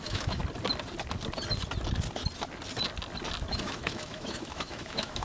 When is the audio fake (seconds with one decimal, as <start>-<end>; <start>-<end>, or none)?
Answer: 0.0-0.4; 3.5-5.2